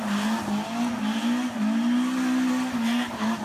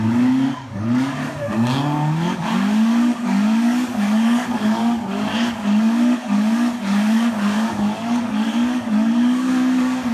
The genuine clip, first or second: first